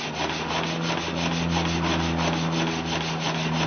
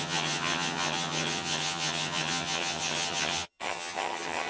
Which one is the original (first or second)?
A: first